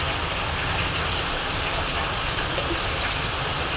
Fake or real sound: real